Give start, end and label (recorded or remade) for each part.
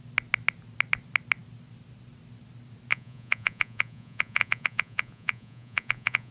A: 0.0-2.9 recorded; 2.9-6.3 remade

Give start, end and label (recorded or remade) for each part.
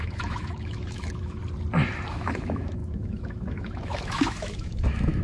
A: 0.0-1.4 remade; 1.4-2.1 recorded; 2.1-5.2 remade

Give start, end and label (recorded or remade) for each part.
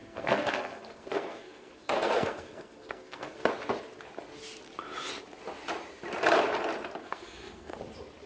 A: 0.0-3.5 remade; 3.5-7.0 recorded; 7.0-7.8 remade; 7.8-8.3 recorded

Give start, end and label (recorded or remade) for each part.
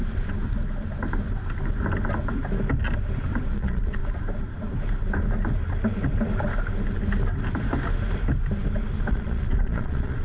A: 0.0-3.5 recorded; 3.5-4.0 remade; 4.0-9.1 recorded; 9.1-10.2 remade